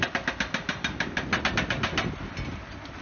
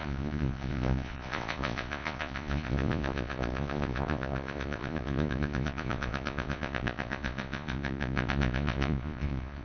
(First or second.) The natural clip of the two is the first